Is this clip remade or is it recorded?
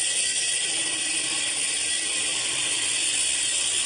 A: recorded